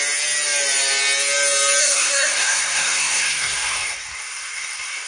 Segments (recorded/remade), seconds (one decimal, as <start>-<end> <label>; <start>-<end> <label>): 0.0-1.8 recorded; 1.8-5.1 remade